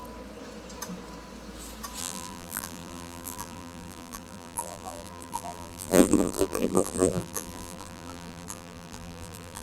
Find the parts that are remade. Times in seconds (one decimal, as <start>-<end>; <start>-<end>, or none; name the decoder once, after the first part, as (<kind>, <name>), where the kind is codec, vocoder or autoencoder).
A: 2.0-9.6 (vocoder, BigVGAN v2)